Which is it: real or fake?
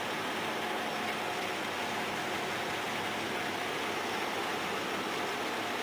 real